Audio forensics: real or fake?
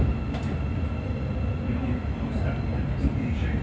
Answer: real